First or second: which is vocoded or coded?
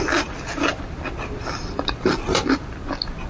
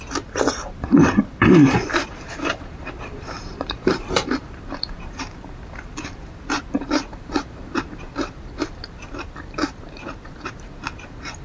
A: second